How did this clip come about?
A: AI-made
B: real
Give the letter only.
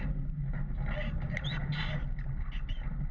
B